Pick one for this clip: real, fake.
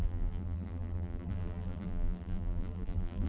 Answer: fake